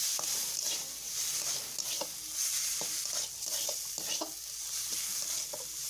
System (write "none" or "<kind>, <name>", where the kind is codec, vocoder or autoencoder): none